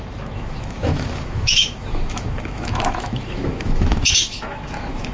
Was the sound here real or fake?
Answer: fake